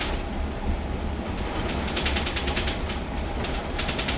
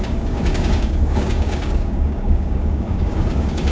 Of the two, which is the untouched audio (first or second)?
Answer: first